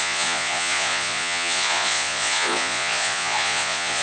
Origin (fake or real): fake